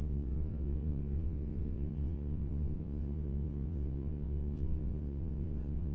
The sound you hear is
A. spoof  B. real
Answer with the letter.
A